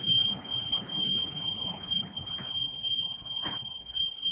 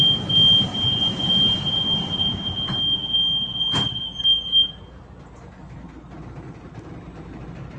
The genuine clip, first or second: second